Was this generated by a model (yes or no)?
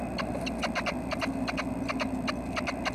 no